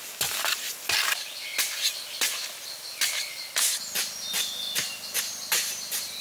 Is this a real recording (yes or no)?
yes